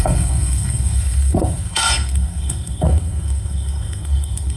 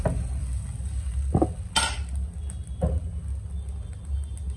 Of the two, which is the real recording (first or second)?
second